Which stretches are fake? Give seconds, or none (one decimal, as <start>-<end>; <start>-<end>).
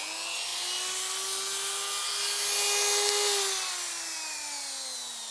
none